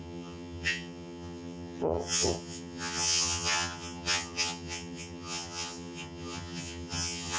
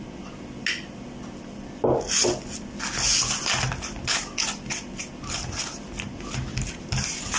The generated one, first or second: first